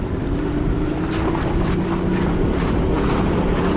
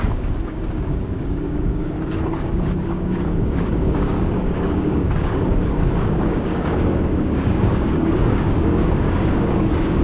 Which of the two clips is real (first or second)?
first